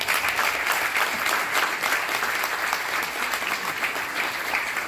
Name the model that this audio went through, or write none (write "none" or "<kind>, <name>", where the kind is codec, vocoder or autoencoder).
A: none